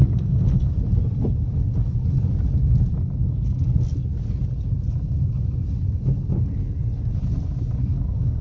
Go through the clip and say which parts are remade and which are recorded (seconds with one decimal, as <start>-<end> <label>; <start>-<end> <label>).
0.0-0.7 remade; 0.7-7.8 recorded; 7.8-8.4 remade